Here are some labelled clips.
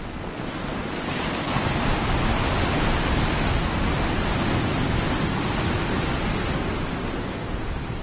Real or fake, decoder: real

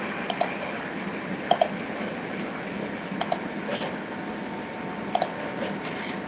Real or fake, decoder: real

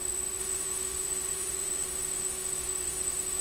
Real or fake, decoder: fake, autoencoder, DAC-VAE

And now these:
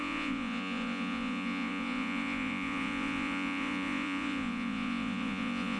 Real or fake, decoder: fake, vocoder, Vocos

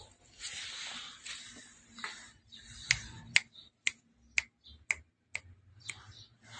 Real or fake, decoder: real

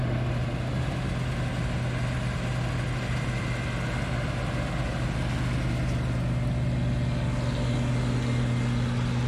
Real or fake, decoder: real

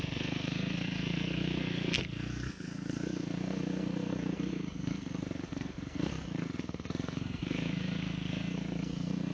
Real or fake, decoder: fake, codec, SNAC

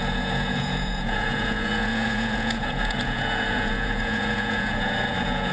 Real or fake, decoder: fake, vocoder, Vocos